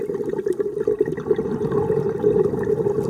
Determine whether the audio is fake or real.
real